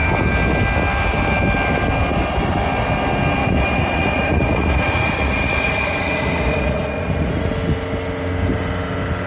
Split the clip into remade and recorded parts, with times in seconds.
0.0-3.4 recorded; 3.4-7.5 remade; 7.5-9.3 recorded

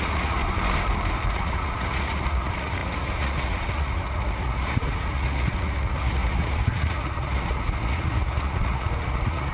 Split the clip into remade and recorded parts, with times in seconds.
0.0-0.4 remade; 0.4-1.3 recorded; 1.3-9.5 remade

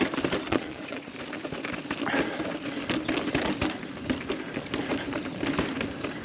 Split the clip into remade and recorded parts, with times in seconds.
0.0-0.5 recorded; 0.5-1.1 remade; 1.1-6.2 recorded

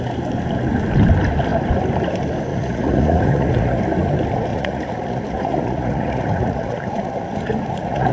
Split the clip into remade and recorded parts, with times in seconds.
0.0-2.5 recorded; 2.5-3.8 remade; 3.8-4.5 recorded; 4.5-8.1 remade